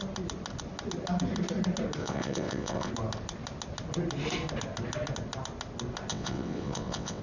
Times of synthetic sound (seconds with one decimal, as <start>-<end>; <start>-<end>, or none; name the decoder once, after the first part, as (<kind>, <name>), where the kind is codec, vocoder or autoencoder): 2.0-2.9 (vocoder, WaveNeXt); 6.1-7.2